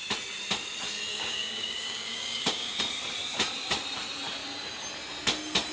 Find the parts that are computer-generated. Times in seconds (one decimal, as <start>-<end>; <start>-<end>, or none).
1.1-2.8